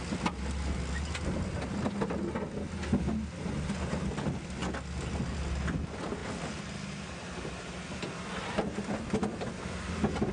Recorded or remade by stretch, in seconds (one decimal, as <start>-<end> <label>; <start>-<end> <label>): 0.0-10.3 recorded